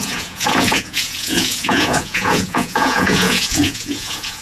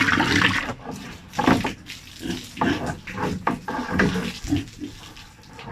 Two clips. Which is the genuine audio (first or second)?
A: second